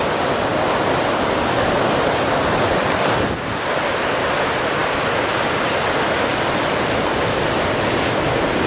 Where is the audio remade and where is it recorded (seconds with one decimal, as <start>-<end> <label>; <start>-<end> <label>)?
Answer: 0.0-6.3 recorded; 6.3-8.7 remade